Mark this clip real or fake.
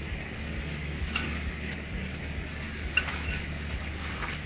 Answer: fake